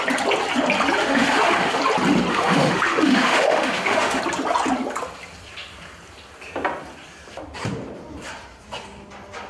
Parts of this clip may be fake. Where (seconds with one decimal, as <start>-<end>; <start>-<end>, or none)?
1.0-1.8; 2.3-4.2